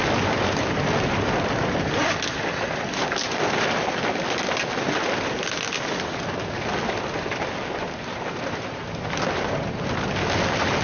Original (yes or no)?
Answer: yes